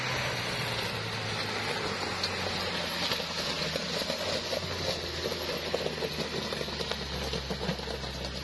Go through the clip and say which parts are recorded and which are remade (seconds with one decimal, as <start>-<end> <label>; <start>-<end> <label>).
0.0-8.4 recorded